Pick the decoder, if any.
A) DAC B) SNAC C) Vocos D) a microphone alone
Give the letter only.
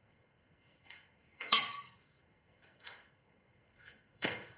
B